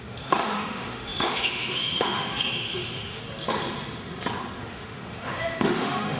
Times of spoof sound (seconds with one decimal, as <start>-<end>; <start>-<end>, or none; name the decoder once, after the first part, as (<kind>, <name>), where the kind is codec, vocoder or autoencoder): 0.0-3.2 (autoencoder, DAC-VAE); 4.6-6.2